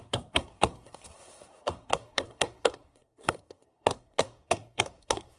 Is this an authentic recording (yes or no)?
no